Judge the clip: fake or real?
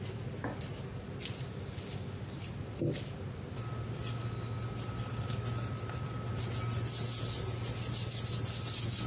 real